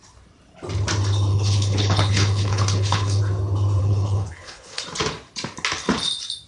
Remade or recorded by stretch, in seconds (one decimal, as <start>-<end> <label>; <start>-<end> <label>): 0.0-1.3 recorded; 1.3-3.2 remade; 3.2-3.8 recorded; 3.8-4.8 remade; 4.8-6.5 recorded